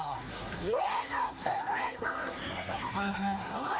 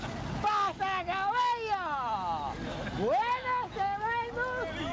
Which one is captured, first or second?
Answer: second